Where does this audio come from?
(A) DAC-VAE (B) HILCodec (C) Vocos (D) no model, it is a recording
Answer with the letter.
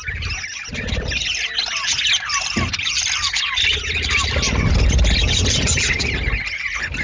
D